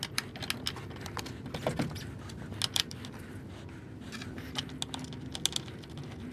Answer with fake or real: real